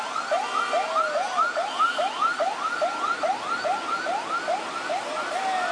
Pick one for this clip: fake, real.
real